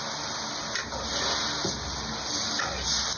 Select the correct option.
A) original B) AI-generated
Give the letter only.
A